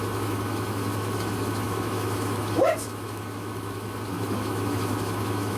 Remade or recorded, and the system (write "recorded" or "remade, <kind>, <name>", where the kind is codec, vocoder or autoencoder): remade, autoencoder, DAC-VAE